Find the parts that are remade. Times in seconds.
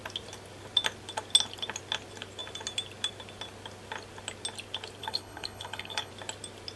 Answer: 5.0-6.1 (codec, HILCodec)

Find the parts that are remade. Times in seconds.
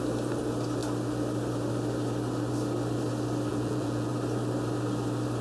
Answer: 3.5-4.1 (vocoder, Vocos)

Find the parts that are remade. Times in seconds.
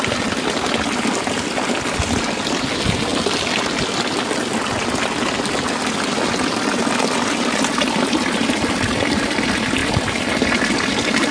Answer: none